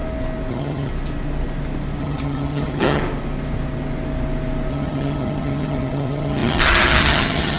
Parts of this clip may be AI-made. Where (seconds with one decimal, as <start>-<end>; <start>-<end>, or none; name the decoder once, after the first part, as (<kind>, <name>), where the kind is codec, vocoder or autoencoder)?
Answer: 0.5-0.9 (vocoder, HiFi-GAN); 2.0-3.0; 4.7-7.6